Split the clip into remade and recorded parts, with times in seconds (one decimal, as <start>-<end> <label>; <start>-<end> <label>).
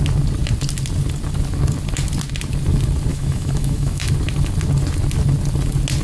0.0-3.1 recorded; 3.1-4.1 remade; 4.1-6.0 recorded